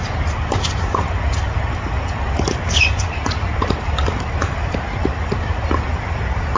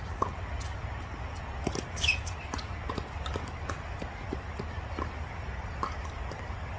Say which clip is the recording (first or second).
second